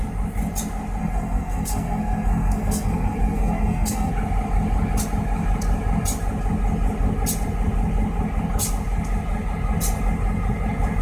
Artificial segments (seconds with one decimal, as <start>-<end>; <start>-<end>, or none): 1.0-4.1